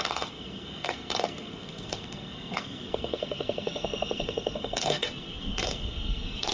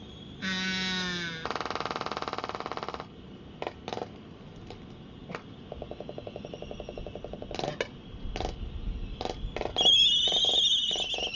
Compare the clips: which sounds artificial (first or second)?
first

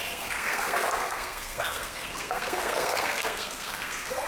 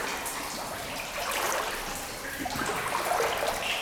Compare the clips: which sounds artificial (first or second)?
first